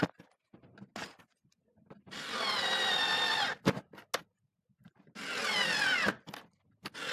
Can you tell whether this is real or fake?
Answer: real